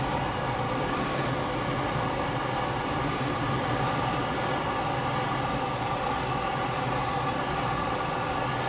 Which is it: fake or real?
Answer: real